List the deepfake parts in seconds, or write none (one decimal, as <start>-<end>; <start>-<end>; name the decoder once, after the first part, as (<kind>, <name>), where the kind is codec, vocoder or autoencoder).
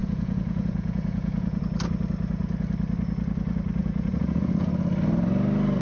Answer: 0.0-1.6 (vocoder, Vocos); 3.8-4.7